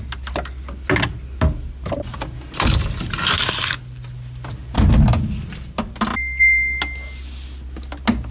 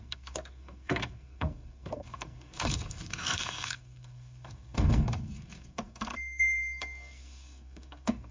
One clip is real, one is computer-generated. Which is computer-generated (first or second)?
second